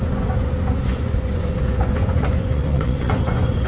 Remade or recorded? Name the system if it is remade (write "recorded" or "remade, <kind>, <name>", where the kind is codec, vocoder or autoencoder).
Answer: remade, vocoder, Vocos